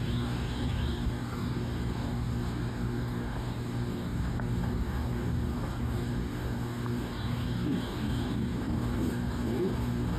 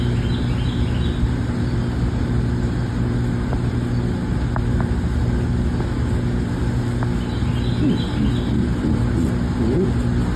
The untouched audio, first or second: second